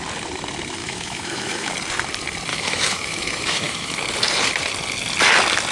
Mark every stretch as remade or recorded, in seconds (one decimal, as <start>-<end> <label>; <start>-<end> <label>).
0.0-0.8 recorded; 0.8-1.7 remade; 1.7-2.5 recorded; 2.5-4.0 remade; 4.0-5.7 recorded